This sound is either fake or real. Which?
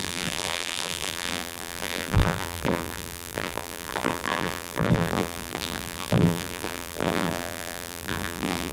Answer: fake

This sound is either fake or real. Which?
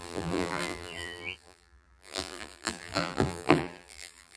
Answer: fake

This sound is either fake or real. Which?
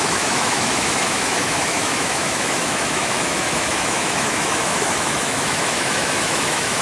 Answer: fake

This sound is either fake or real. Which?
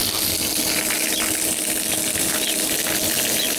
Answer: real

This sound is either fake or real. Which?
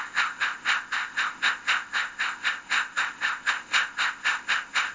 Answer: fake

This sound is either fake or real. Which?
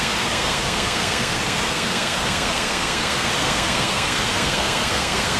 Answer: fake